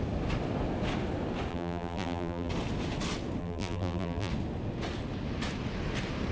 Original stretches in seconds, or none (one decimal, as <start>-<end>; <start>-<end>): 0.0-1.5; 2.5-3.4; 4.3-6.3